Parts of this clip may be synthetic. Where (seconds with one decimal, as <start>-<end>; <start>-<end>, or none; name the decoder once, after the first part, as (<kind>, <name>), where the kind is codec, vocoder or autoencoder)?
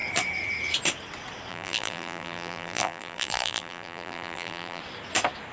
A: 1.5-4.8 (vocoder, BigVGAN v2)